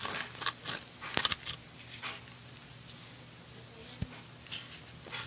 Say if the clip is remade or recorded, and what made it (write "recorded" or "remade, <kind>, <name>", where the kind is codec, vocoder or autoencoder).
recorded